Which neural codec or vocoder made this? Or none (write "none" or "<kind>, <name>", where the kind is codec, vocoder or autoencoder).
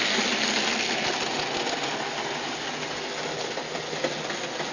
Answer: none